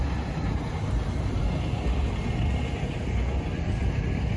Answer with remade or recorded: recorded